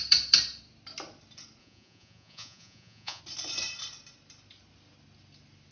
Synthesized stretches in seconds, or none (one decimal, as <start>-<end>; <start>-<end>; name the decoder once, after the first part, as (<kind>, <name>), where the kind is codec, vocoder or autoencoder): 1.6-3.2 (vocoder, Vocos)